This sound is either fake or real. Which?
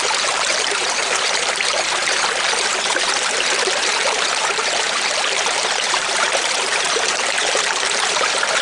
fake